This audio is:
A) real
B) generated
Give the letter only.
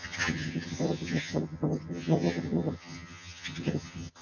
B